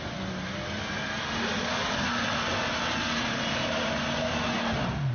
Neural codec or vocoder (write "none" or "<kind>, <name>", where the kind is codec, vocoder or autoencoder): none